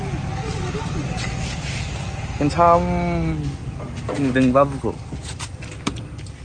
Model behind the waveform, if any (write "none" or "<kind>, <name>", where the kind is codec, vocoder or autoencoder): none